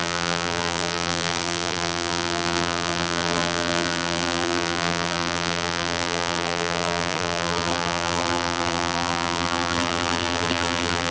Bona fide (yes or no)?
no